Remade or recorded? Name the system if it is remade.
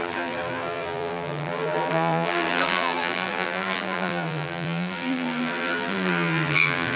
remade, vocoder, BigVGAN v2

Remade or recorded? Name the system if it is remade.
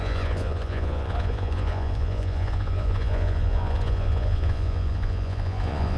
remade, vocoder, Vocos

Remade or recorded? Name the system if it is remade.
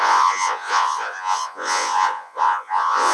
remade, vocoder, Vocos